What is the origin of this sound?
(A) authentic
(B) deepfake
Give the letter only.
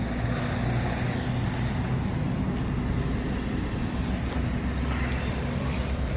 A